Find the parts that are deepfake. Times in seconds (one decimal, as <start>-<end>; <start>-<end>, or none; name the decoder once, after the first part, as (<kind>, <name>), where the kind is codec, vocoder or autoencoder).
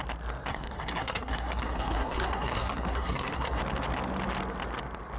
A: 0.5-3.6 (codec, SNAC)